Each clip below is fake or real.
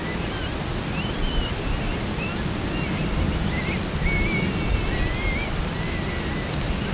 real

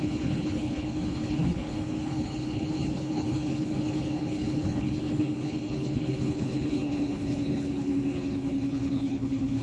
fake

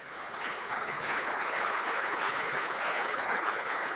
fake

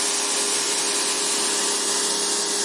real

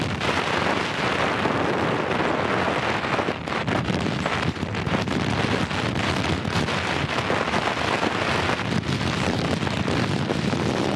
real